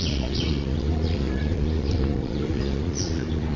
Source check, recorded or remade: remade